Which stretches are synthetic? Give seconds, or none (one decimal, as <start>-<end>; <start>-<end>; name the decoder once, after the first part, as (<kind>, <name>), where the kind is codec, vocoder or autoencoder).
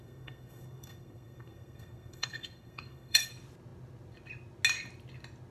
0.0-3.3 (codec, SNAC)